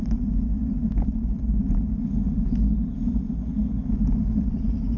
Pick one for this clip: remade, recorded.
recorded